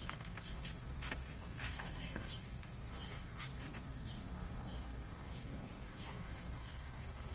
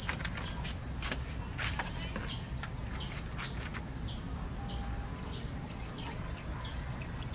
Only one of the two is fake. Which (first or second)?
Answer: first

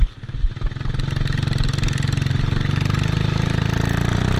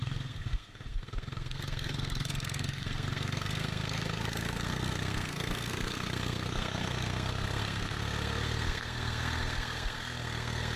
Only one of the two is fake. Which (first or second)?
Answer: second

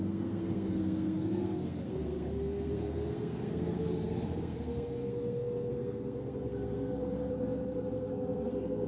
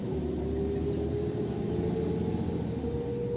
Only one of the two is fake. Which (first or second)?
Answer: first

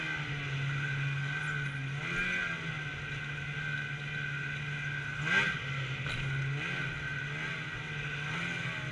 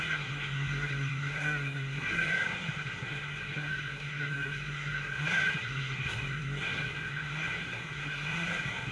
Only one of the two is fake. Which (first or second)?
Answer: second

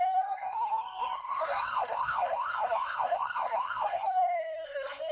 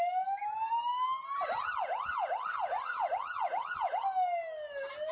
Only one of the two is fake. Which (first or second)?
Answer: first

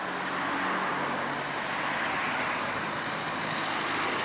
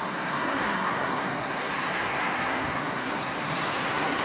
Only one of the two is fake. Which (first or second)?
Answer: second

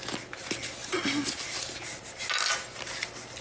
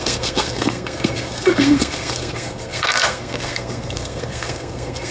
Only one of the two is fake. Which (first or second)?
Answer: second